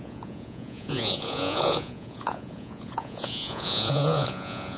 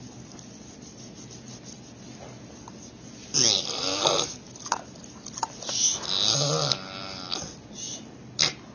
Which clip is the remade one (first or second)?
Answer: first